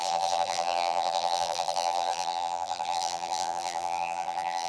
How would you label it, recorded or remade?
remade